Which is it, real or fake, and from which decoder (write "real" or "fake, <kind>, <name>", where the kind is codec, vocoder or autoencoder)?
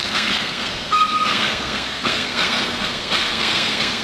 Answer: fake, codec, SNAC